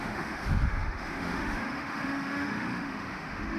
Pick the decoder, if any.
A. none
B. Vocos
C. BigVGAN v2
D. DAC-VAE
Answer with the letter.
D